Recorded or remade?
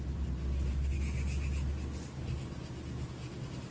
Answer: recorded